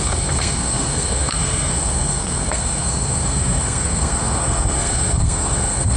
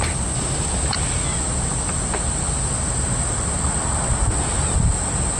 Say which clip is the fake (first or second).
first